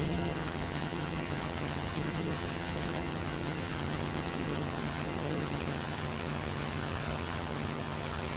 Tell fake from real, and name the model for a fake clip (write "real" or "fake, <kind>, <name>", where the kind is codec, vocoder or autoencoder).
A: fake, vocoder, HiFi-GAN